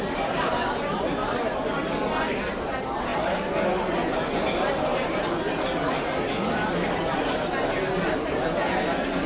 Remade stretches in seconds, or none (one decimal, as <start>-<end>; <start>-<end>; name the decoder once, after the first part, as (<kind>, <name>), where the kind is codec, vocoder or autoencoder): none